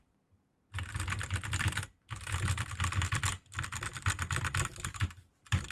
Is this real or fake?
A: real